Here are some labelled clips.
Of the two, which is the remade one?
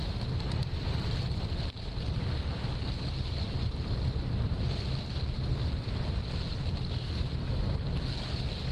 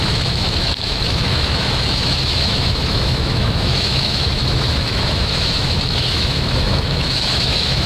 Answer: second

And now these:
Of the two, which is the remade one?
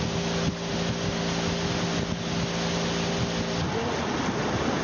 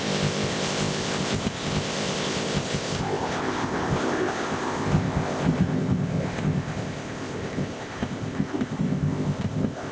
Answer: second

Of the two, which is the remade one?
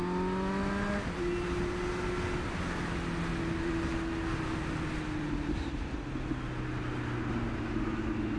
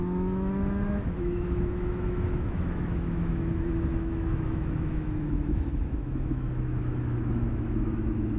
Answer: second